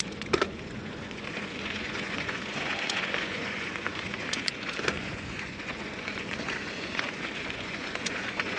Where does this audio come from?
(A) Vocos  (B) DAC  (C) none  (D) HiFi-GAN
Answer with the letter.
A